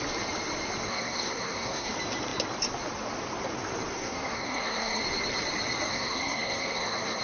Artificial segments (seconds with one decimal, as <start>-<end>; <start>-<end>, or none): 0.9-1.9; 3.9-5.0; 5.9-7.2